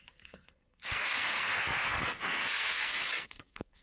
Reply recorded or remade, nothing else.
remade